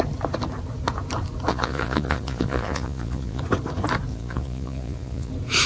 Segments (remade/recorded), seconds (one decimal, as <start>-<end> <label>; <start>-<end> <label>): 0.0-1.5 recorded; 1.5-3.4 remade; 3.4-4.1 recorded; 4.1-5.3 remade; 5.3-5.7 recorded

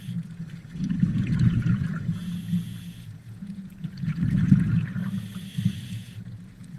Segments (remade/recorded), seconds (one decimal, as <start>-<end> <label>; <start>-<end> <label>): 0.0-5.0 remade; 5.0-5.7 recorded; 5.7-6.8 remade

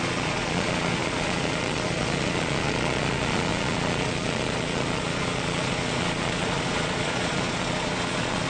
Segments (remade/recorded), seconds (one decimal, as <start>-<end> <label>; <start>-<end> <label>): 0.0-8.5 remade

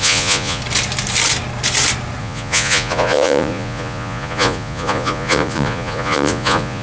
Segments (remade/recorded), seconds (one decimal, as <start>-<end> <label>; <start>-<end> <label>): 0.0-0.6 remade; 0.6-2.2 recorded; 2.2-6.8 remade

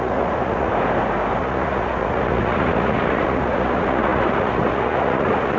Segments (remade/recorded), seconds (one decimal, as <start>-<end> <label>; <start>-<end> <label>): 0.0-0.7 remade; 0.7-1.4 recorded; 1.4-5.6 remade

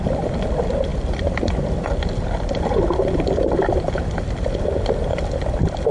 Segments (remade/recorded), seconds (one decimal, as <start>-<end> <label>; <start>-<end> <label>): 0.0-5.9 recorded

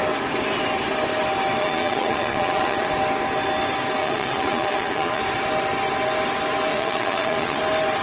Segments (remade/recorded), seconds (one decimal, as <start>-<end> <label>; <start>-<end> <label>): 0.0-1.6 recorded; 1.6-2.9 remade; 2.9-4.0 recorded; 4.0-5.2 remade; 5.2-6.7 recorded; 6.7-7.6 remade; 7.6-8.0 recorded

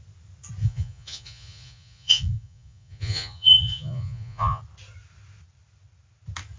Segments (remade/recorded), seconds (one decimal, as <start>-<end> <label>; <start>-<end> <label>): 0.0-0.6 recorded; 0.6-4.6 remade; 4.6-6.6 recorded